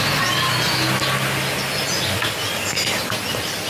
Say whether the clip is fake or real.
real